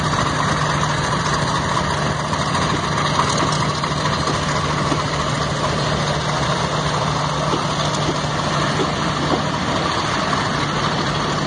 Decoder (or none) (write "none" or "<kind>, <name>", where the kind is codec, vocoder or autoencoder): none